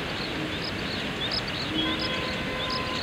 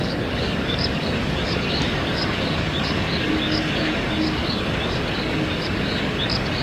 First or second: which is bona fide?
first